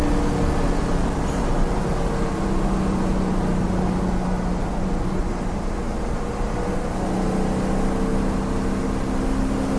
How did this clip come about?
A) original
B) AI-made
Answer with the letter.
A